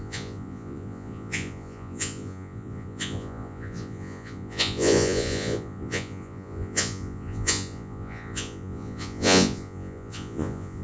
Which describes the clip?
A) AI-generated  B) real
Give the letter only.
A